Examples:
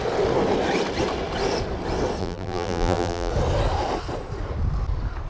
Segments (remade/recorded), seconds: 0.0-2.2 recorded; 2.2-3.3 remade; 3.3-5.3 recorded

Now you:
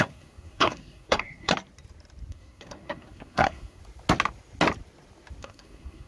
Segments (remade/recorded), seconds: 0.0-1.5 remade; 1.5-2.3 recorded; 2.3-3.8 remade; 3.8-5.4 recorded; 5.4-6.1 remade

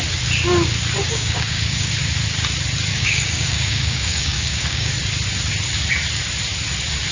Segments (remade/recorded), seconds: 0.0-1.0 recorded; 1.0-1.9 remade; 1.9-2.9 recorded; 2.9-4.9 remade; 4.9-7.1 recorded

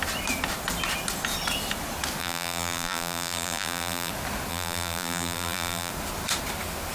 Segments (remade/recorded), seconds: 0.0-2.2 recorded; 2.2-4.1 remade; 4.1-4.5 recorded; 4.5-5.9 remade; 5.9-6.9 recorded

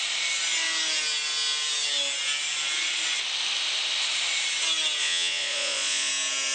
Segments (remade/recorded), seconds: 0.0-5.0 recorded; 5.0-6.1 remade; 6.1-6.5 recorded

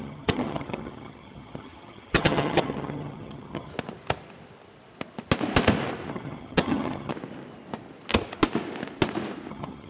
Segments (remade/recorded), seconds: 0.0-3.7 remade; 3.7-6.1 recorded; 6.1-7.1 remade; 7.1-9.5 recorded; 9.5-9.9 remade

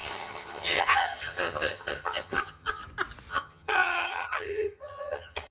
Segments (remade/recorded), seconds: 0.0-2.8 remade; 2.8-3.3 recorded; 3.3-5.5 remade